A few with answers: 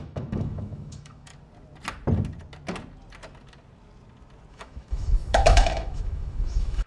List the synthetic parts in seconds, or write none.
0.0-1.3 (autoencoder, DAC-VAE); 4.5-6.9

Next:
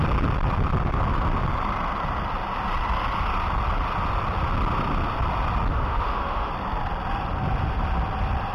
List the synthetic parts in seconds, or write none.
5.7-6.5 (autoencoder, DAC-VAE)

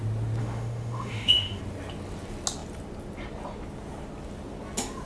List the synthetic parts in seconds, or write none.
0.4-1.6 (autoencoder, DAC-VAE)

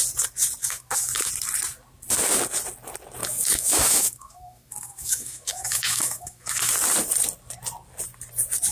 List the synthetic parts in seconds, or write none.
0.6-1.3 (autoencoder, DAC-VAE); 3.2-6.7

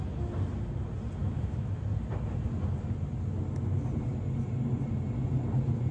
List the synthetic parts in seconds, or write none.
1.2-1.8 (autoencoder, DAC-VAE)

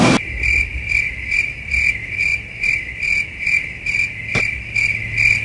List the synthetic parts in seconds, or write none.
none

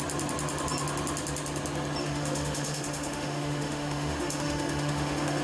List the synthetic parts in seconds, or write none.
2.0-5.4 (autoencoder, DAC-VAE)

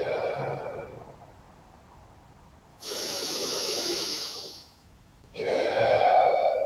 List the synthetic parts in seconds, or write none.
2.7-6.7 (autoencoder, DAC-VAE)